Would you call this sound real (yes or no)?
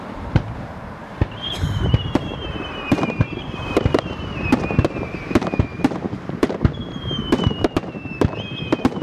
no